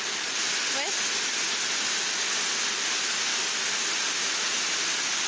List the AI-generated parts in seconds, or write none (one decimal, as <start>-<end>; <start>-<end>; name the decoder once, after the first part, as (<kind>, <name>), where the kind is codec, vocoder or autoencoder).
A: none